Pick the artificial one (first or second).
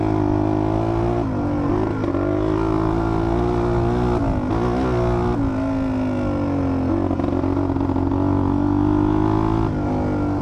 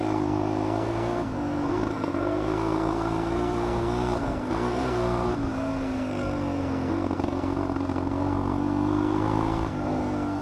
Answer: second